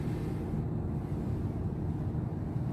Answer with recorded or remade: recorded